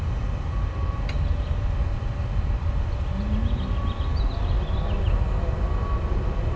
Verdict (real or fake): real